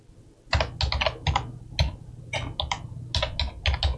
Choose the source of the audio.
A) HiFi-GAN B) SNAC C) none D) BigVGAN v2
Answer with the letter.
C